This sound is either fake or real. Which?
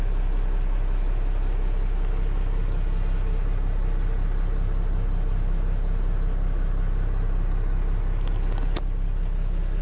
real